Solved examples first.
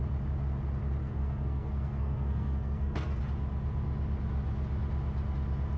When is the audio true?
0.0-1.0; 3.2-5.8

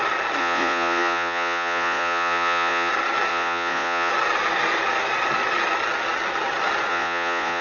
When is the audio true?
0.0-0.4; 2.9-3.3; 4.1-6.9

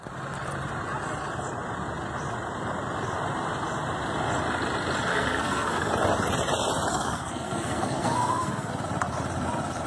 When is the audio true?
0.0-5.1; 5.9-6.9; 8.7-9.9

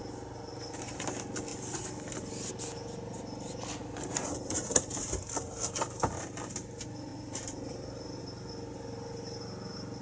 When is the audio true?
0.0-1.5; 2.5-3.8; 4.5-7.1; 8.2-10.0